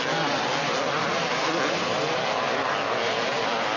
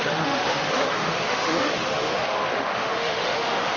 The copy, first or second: second